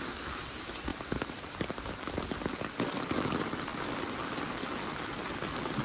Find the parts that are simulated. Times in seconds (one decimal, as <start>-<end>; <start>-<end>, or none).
none